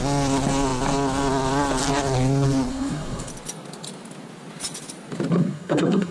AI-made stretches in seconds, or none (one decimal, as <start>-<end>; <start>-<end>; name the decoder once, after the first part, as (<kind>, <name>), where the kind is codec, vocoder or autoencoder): 2.7-3.3 (codec, SNAC); 5.3-6.1